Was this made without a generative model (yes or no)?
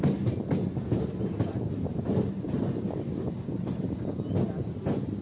yes